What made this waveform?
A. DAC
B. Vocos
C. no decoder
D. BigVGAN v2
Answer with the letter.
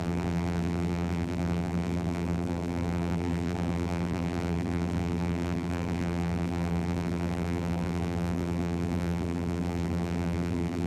D